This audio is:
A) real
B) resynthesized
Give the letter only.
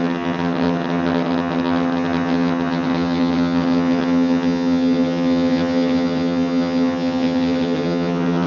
B